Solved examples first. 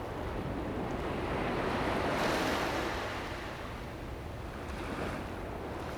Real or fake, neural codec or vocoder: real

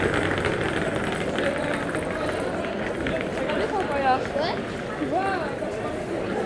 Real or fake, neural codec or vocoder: real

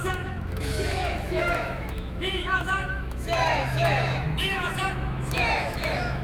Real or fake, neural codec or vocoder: fake, autoencoder, DAC-VAE